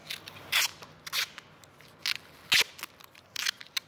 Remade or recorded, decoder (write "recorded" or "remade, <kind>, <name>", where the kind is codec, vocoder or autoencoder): recorded